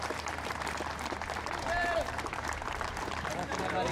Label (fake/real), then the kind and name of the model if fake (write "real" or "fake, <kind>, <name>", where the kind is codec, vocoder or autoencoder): fake, vocoder, BigVGAN v2